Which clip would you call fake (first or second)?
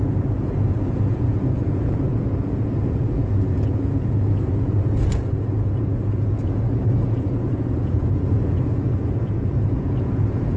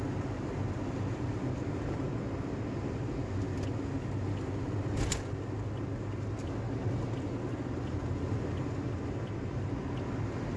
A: first